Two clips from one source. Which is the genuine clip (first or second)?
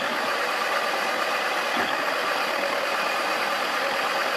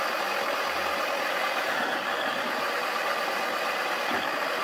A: second